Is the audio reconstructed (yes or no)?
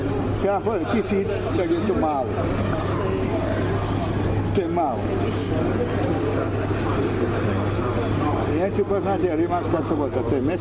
no